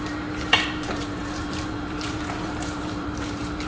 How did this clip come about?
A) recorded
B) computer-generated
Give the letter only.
B